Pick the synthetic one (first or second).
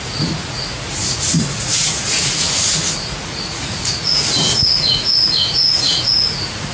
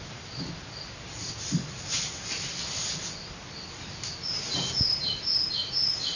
first